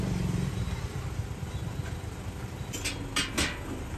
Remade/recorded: recorded